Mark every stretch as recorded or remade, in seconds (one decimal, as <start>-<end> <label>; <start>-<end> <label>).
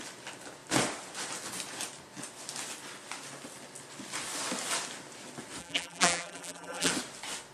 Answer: 0.0-5.6 recorded; 5.6-6.9 remade; 6.9-7.5 recorded